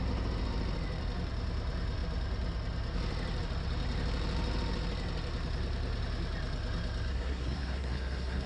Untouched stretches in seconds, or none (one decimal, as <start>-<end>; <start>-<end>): 0.0-7.1